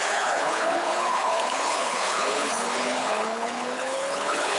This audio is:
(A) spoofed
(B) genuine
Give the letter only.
A